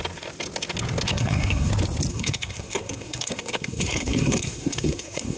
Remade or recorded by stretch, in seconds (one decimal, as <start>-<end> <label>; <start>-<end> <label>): 0.0-1.1 recorded; 1.1-1.7 remade; 1.7-2.1 recorded; 2.1-5.4 remade